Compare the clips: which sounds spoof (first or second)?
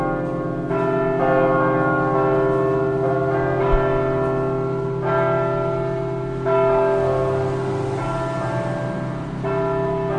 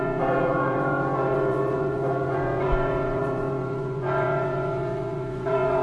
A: second